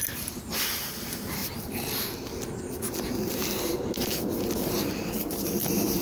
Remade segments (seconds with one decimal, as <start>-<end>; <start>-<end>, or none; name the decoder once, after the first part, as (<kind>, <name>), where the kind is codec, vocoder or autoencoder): none